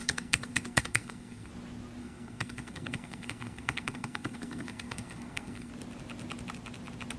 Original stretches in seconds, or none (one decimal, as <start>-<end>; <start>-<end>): 1.5-2.0; 5.7-7.2